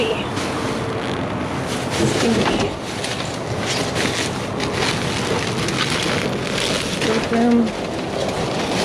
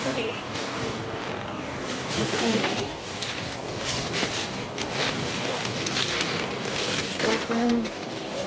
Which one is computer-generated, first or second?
second